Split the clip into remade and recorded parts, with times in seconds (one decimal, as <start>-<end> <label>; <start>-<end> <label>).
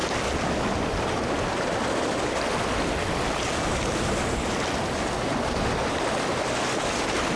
0.0-7.4 recorded